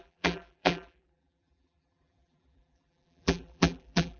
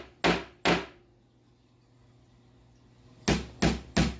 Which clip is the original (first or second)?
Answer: second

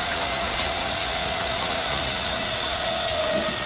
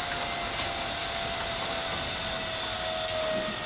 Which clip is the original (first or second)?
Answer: second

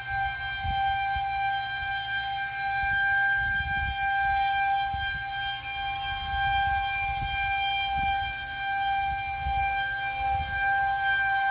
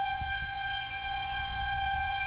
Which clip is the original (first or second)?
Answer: first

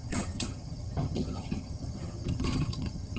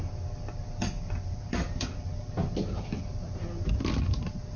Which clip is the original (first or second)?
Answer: second